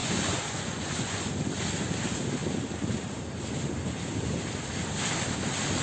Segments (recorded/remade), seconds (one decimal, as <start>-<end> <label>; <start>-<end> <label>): 0.0-1.3 remade; 1.3-5.8 recorded